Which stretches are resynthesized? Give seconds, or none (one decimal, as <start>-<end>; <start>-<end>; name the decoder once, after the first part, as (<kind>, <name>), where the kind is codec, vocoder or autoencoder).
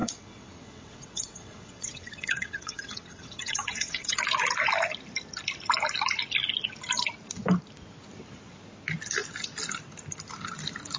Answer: 0.0-4.2 (vocoder, WaveNeXt)